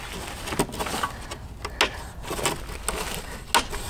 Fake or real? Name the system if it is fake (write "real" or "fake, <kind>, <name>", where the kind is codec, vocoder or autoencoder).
real